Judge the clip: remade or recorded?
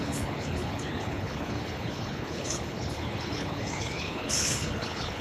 remade